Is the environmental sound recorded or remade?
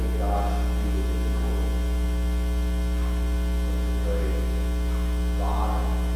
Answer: recorded